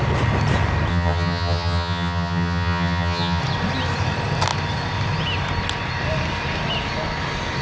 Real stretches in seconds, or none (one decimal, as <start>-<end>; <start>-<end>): 0.0-0.9; 3.4-7.6